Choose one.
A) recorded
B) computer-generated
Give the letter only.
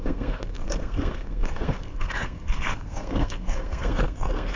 B